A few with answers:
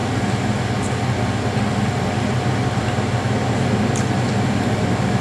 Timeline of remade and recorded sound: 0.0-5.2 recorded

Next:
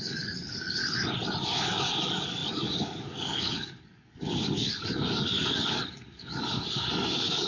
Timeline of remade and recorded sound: 0.0-0.8 remade; 0.8-1.4 recorded; 1.4-7.5 remade

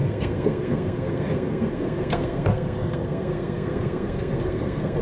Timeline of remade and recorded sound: 0.0-5.0 remade

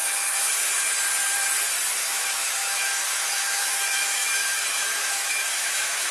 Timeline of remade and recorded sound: 0.0-0.7 remade; 0.7-2.0 recorded; 2.0-6.1 remade